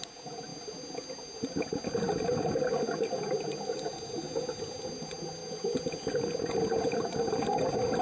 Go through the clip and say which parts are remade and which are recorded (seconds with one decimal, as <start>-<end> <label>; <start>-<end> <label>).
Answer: 0.0-8.0 recorded